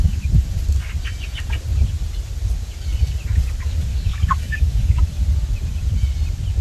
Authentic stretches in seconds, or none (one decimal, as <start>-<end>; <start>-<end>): 0.0-3.9; 5.0-6.6